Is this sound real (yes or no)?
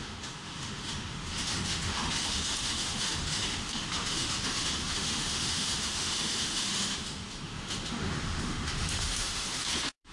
no